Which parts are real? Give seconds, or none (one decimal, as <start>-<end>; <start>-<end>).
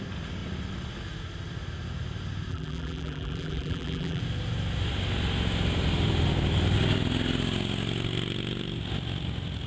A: 0.0-2.5; 4.2-9.7